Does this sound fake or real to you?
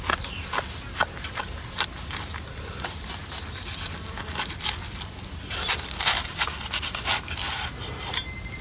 real